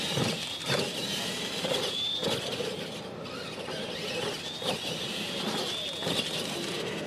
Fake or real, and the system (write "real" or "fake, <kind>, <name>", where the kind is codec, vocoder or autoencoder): real